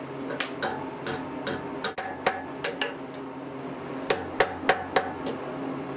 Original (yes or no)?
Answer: yes